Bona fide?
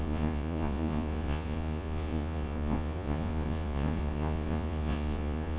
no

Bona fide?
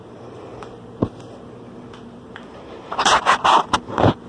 no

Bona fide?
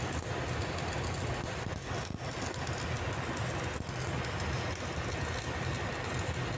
yes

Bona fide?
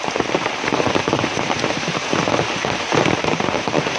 no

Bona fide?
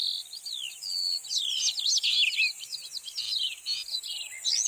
yes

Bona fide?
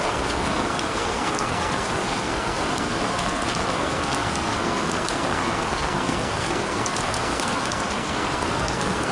no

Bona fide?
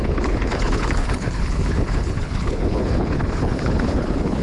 no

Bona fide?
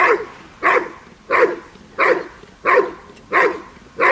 yes